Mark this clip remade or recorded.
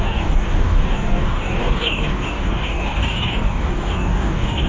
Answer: remade